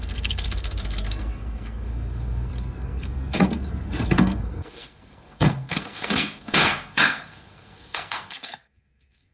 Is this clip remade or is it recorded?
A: remade